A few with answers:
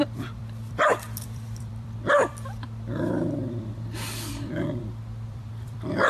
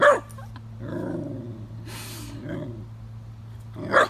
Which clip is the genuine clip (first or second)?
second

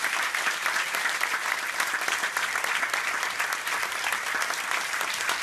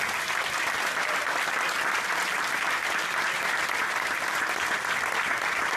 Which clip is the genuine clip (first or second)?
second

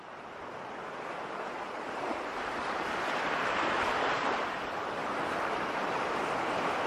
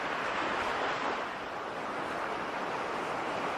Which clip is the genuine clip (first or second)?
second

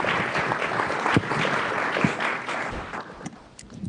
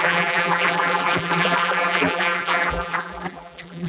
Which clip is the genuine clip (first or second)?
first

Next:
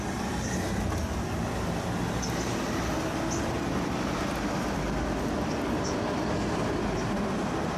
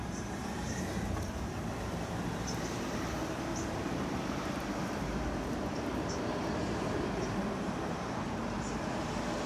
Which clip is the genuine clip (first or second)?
first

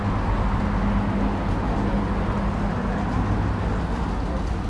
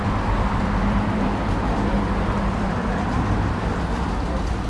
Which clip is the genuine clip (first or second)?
first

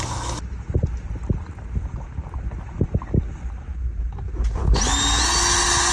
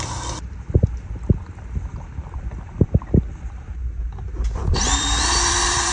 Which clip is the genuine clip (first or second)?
first